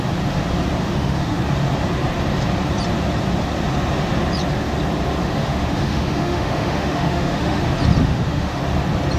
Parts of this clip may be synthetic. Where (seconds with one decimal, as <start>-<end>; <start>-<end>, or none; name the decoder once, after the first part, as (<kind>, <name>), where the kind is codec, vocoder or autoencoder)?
0.8-1.4 (autoencoder, DAC-VAE); 5.2-7.6; 8.0-8.6